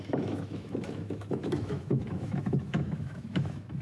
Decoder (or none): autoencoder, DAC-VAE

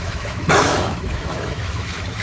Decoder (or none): autoencoder, DAC-VAE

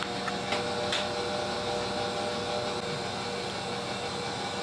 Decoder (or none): none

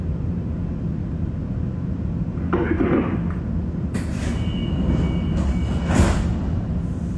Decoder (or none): none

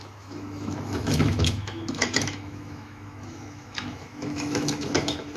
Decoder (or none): autoencoder, DAC-VAE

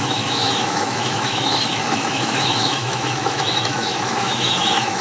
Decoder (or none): autoencoder, DAC-VAE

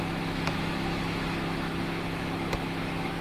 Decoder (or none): autoencoder, DAC-VAE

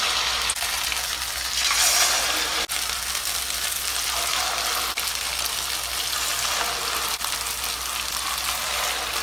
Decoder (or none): none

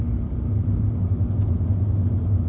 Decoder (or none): none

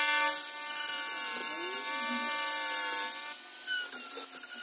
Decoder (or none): none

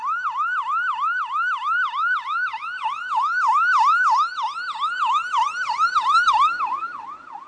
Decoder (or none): none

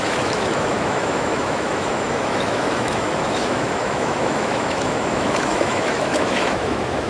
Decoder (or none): autoencoder, DAC-VAE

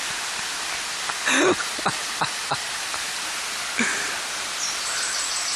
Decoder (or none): none